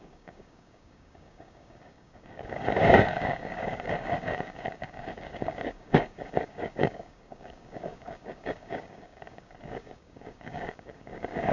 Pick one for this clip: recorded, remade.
remade